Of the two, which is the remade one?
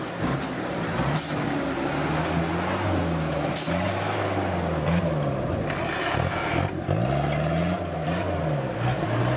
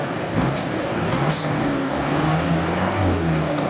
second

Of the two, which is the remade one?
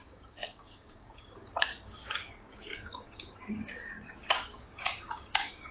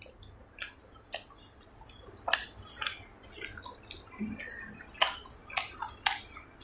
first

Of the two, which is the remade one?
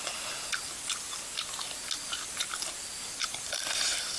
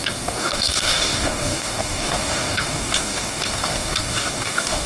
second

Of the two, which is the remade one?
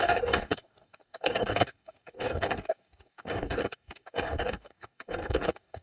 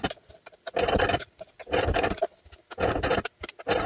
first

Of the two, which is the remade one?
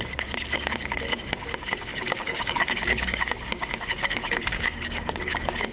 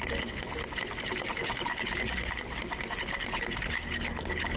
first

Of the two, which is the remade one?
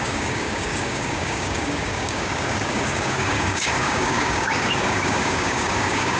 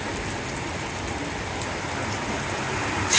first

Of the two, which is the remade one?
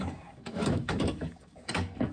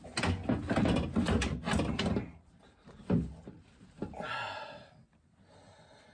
first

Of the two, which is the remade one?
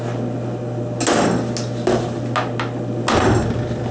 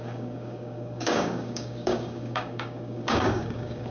second